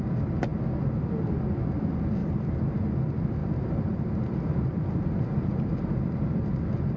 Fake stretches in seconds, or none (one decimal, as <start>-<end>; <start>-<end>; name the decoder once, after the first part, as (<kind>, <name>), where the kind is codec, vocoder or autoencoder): 2.2-2.7 (vocoder, BigVGAN v2); 3.4-6.6